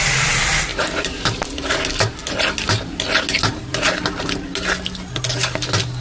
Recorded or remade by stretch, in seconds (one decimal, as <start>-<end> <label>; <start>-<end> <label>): 0.0-0.7 recorded; 0.7-1.7 remade; 1.7-6.0 recorded